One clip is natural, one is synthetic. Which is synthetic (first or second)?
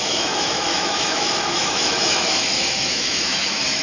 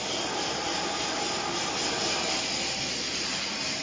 first